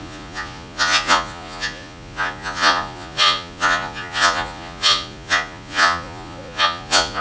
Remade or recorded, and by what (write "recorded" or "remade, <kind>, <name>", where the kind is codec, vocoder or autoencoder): remade, vocoder, Vocos